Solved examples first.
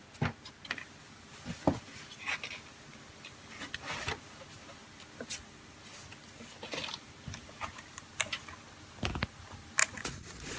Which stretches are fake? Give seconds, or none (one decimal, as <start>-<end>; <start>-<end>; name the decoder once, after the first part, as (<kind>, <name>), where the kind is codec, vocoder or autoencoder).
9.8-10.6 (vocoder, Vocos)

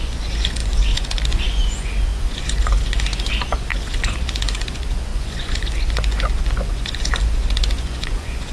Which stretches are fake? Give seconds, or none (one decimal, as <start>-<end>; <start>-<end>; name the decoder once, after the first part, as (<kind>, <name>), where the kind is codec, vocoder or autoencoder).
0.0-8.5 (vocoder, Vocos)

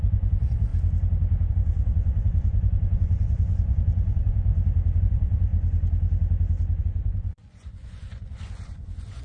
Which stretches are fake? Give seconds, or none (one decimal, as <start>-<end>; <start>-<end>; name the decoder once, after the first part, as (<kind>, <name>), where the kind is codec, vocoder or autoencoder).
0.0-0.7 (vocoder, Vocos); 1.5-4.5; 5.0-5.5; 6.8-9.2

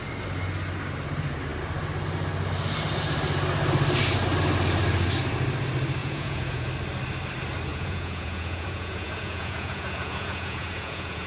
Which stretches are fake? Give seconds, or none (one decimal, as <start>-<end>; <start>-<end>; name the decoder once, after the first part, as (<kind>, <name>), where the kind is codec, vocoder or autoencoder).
6.0-6.7 (vocoder, Vocos); 7.7-11.3

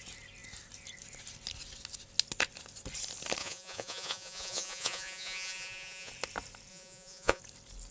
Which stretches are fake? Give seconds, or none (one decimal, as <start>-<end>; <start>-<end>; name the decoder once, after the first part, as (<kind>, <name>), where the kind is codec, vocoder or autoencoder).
3.4-6.1 (vocoder, Vocos); 6.7-7.4

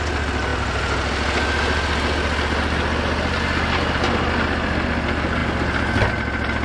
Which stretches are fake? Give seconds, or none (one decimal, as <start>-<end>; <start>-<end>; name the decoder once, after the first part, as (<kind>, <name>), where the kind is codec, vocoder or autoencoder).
none

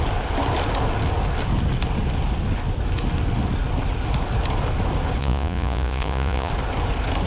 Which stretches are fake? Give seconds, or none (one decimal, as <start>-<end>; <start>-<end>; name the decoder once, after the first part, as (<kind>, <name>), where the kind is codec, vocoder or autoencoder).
5.2-6.5 (vocoder, Vocos)